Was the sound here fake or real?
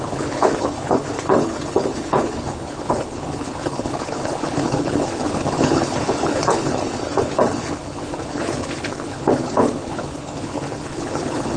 fake